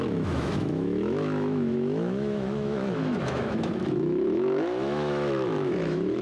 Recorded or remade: remade